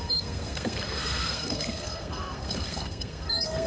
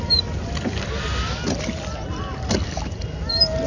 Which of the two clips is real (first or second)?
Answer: second